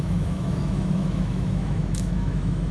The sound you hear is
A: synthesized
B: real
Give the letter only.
A